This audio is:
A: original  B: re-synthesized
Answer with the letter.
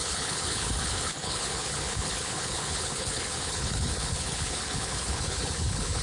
B